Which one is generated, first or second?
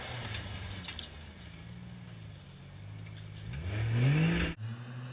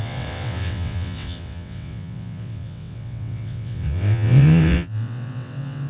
second